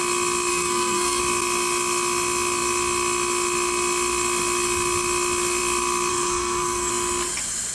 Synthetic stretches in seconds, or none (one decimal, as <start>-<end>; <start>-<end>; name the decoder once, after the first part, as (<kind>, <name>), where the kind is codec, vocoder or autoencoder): 0.5-1.2 (codec, SNAC); 6.1-6.9

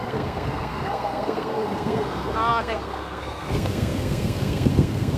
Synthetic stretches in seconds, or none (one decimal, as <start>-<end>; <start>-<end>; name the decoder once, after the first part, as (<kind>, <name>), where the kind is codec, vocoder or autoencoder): 0.0-5.2 (codec, SNAC)